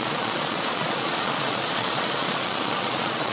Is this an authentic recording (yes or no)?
no